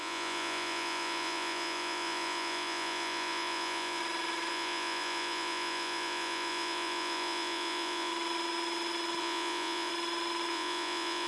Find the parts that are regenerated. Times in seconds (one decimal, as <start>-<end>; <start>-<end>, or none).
0.0-4.0; 4.5-8.1; 9.2-9.9; 10.5-11.3